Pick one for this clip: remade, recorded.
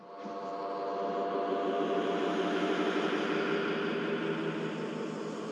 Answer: recorded